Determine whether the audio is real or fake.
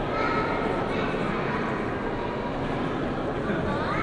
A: real